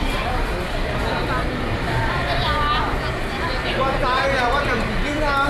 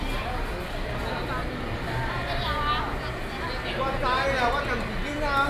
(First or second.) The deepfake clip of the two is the first